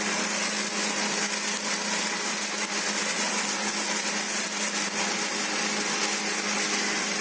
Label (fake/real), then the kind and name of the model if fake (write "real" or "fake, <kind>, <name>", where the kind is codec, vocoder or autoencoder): real